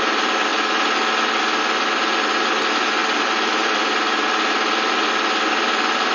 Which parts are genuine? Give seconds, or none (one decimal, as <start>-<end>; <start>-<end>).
0.0-0.5; 1.4-3.0; 4.9-6.1